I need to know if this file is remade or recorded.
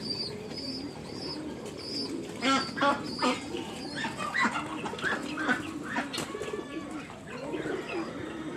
recorded